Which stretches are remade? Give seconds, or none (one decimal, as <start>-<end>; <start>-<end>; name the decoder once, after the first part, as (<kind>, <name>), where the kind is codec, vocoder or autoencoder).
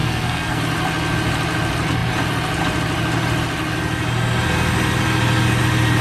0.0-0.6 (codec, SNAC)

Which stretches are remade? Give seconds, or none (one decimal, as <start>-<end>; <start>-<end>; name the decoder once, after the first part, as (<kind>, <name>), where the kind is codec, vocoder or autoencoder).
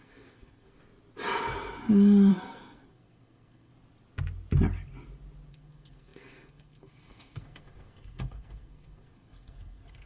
0.0-0.8 (codec, SNAC); 2.3-3.7; 5.5-10.1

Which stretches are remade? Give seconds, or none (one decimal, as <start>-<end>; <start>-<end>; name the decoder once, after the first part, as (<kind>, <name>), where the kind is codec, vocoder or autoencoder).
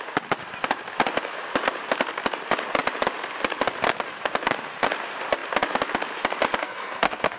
6.6-7.4 (codec, SNAC)